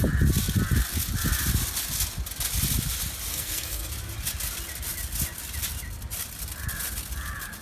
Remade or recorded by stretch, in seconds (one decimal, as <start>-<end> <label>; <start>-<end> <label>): 0.0-3.3 recorded; 3.3-3.9 remade; 3.9-7.6 recorded